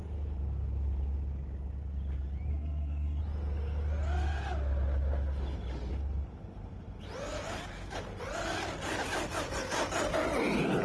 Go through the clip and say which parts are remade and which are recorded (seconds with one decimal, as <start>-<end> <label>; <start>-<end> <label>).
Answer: 0.0-2.5 recorded; 2.5-3.2 remade; 3.2-10.8 recorded

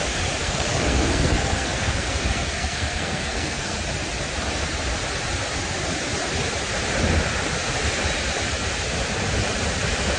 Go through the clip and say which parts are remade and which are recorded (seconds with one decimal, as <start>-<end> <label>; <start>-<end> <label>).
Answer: 0.0-0.4 recorded; 0.4-3.8 remade; 3.8-10.2 recorded

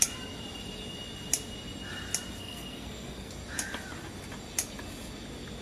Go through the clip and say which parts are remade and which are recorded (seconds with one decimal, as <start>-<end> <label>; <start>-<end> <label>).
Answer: 0.0-2.4 recorded; 2.4-3.3 remade; 3.3-5.6 recorded

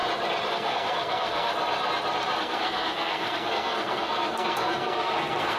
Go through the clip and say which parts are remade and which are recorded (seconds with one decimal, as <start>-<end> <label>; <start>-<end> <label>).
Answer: 0.0-0.5 recorded; 0.5-1.5 remade; 1.5-2.4 recorded; 2.4-5.6 remade

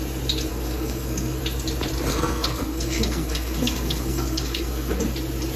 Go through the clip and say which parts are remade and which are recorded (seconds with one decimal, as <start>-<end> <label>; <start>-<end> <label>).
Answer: 0.0-0.5 recorded; 0.5-1.4 remade; 1.4-2.1 recorded; 2.1-5.0 remade; 5.0-5.6 recorded

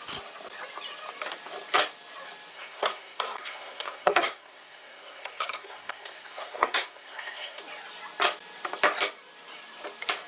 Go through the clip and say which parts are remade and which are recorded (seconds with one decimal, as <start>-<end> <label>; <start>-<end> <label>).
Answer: 0.0-2.5 recorded; 2.5-7.6 remade; 7.6-10.3 recorded

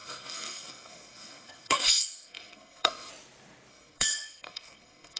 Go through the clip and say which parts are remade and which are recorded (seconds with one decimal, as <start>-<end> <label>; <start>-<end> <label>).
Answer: 0.0-3.1 remade; 3.1-3.7 recorded; 3.7-5.2 remade

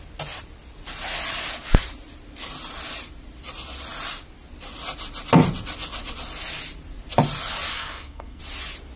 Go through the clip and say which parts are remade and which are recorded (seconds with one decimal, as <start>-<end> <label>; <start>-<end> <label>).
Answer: 0.0-7.7 recorded; 7.7-8.4 remade; 8.4-9.0 recorded